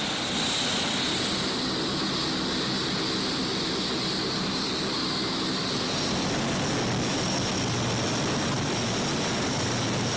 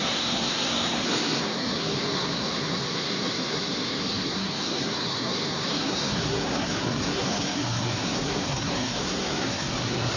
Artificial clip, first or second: second